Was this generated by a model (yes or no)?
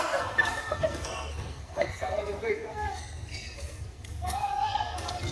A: yes